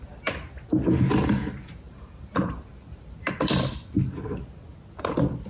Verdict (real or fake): real